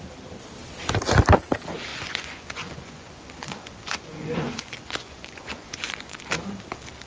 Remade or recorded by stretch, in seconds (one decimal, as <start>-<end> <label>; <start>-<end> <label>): 0.0-1.9 recorded; 1.9-6.2 remade; 6.2-7.1 recorded